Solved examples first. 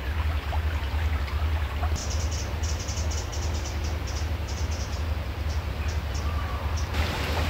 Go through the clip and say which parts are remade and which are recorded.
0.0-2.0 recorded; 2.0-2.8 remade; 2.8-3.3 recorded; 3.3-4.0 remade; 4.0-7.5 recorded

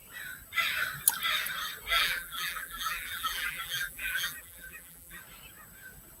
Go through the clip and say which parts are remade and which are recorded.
0.0-1.9 recorded; 1.9-5.2 remade; 5.2-6.2 recorded

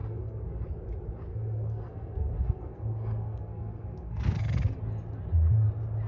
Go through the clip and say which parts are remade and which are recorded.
0.0-0.6 remade; 0.6-1.3 recorded; 1.3-4.8 remade; 4.8-6.1 recorded

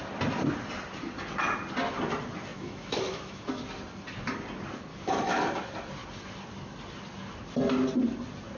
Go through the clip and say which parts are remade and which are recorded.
0.0-2.5 recorded; 2.5-3.5 remade; 3.5-4.9 recorded; 4.9-5.4 remade; 5.4-8.6 recorded

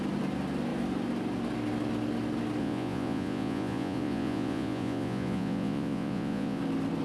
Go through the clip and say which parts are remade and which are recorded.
0.0-2.6 recorded; 2.6-6.6 remade; 6.6-7.0 recorded

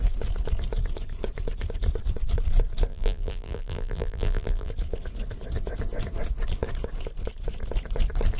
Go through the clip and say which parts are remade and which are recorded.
0.0-2.9 recorded; 2.9-4.7 remade; 4.7-8.4 recorded

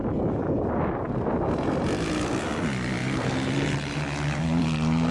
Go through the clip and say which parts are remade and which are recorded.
0.0-3.0 recorded; 3.0-4.0 remade; 4.0-5.1 recorded

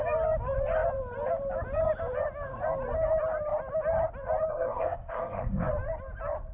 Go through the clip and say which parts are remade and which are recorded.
0.0-4.5 recorded; 4.5-5.7 remade; 5.7-6.5 recorded